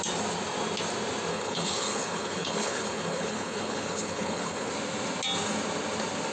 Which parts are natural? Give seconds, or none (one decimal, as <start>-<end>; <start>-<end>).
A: 0.0-1.3; 4.7-6.3